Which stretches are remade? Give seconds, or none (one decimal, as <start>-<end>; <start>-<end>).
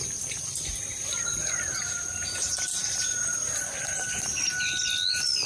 none